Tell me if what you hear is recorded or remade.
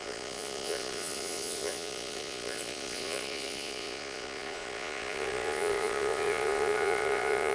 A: remade